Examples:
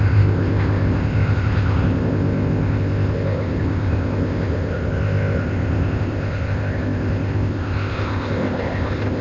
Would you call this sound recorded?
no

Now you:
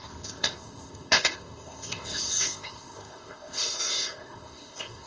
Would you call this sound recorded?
no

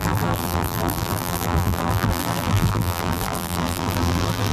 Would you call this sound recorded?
no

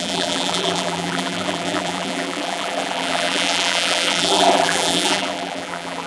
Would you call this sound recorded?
no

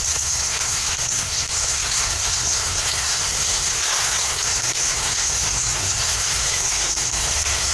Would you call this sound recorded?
no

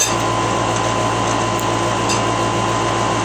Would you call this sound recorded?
yes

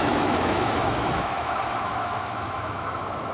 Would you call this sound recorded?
no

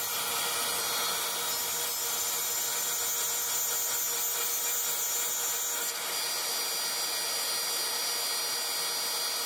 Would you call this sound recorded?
yes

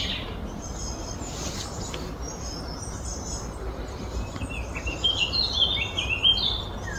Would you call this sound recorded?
yes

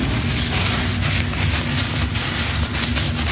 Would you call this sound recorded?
yes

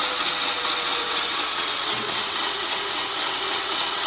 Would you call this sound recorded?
no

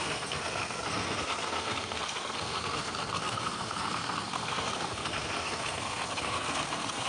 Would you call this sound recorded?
no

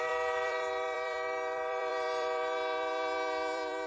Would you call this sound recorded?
no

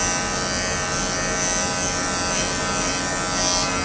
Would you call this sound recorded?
yes